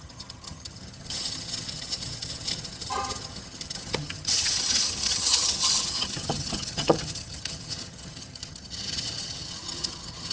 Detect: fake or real fake